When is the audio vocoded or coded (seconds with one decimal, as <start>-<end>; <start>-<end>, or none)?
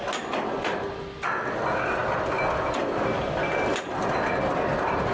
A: none